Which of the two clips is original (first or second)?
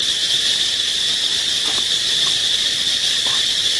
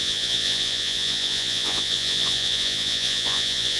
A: first